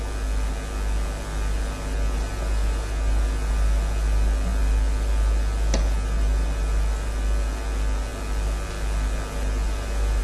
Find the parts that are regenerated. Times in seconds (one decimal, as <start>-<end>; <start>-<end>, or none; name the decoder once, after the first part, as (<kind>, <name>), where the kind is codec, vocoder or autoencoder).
none